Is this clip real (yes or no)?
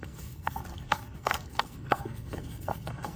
no